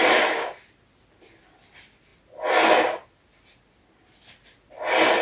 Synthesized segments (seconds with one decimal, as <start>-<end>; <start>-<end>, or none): none